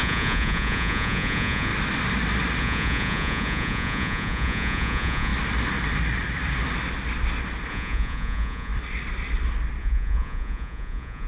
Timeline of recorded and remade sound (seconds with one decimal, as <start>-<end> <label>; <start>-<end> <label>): 0.0-1.7 remade; 1.7-2.6 recorded; 2.6-5.3 remade; 5.3-7.7 recorded; 7.7-8.7 remade; 8.7-9.8 recorded; 9.8-11.3 remade